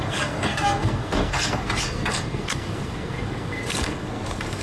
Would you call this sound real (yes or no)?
no